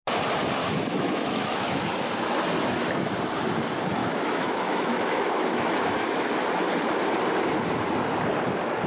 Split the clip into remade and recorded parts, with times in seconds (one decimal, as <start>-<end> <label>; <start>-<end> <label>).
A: 0.0-0.6 recorded; 0.6-1.8 remade; 1.8-4.0 recorded; 4.0-6.3 remade; 6.3-8.9 recorded